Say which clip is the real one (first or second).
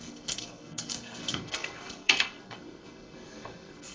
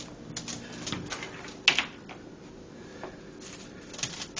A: second